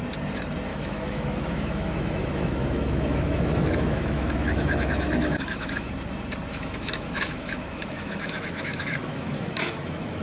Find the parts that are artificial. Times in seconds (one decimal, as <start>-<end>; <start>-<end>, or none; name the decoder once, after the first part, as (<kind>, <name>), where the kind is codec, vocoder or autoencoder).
0.7-5.9 (autoencoder, DAC-VAE); 6.5-10.2